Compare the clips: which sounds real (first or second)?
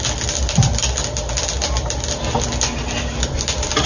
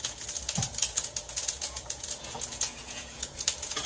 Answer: first